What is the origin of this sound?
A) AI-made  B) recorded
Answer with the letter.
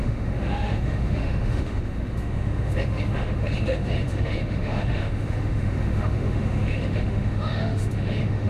A